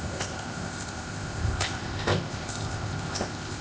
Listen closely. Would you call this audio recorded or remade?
remade